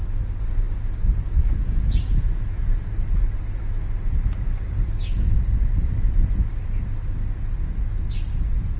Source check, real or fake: real